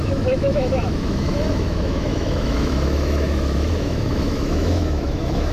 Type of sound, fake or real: fake